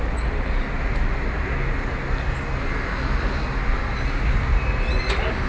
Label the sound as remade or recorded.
recorded